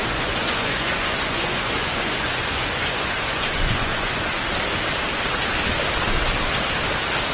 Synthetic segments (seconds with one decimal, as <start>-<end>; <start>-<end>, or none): 0.0-4.4

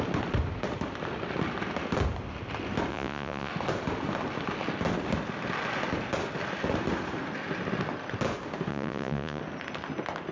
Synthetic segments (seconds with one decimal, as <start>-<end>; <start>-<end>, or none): 2.9-3.5; 8.7-9.4

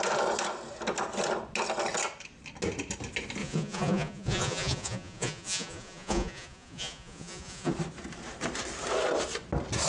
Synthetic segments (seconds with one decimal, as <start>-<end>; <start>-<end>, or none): 3.4-7.7

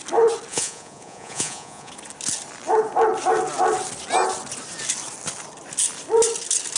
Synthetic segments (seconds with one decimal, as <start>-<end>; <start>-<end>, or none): 0.5-1.9

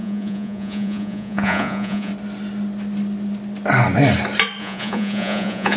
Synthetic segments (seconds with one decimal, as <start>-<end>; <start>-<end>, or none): 0.0-2.1; 4.6-5.8

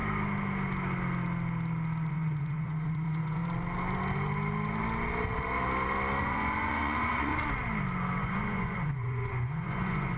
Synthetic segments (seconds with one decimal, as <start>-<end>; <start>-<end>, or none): 2.1-3.4; 6.2-7.3; 8.2-10.2